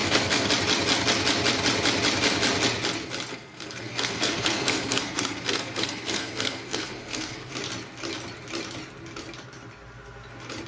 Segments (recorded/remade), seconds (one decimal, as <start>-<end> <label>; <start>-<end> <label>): 0.0-0.5 remade; 0.5-3.3 recorded; 3.3-7.5 remade; 7.5-10.7 recorded